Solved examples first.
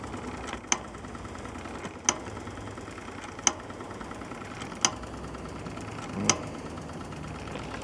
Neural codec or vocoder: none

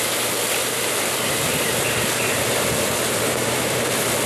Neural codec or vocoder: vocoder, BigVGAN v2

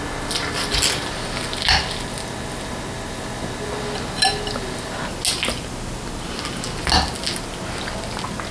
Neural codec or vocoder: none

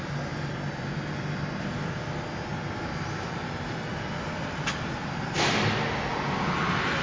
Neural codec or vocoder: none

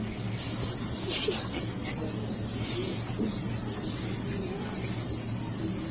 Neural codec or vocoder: none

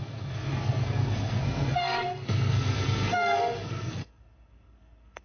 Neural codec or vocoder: codec, SNAC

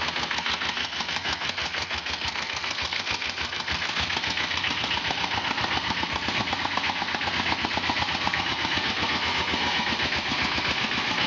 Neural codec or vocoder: codec, SNAC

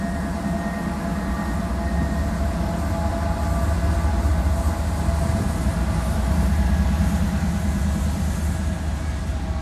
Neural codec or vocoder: none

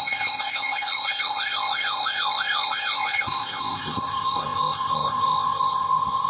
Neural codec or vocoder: codec, ZipCodec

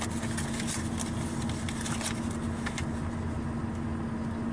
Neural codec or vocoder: none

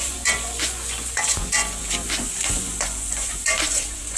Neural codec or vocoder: vocoder, Vocos